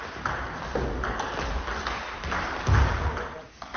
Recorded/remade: recorded